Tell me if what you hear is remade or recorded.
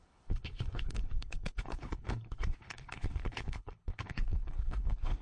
remade